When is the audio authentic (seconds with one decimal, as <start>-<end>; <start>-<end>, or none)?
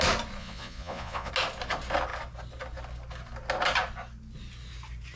0.0-0.4; 1.3-5.2